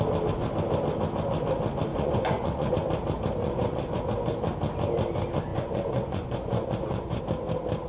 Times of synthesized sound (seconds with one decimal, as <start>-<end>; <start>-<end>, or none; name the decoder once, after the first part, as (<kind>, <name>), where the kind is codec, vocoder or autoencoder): 1.9-2.7 (vocoder, Vocos); 3.4-4.0; 5.5-7.2